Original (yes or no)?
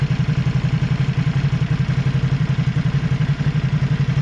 yes